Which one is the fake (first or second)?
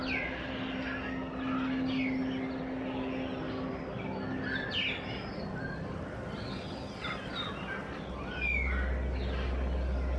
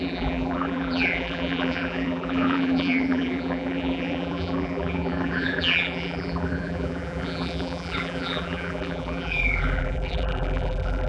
second